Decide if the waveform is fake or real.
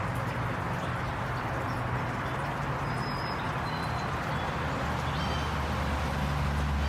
real